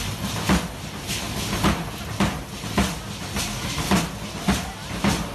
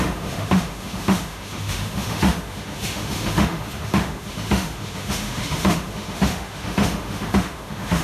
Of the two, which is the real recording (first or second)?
first